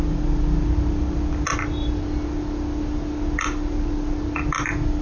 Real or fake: real